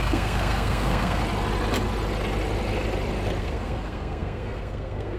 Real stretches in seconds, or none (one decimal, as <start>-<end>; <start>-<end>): 1.2-3.4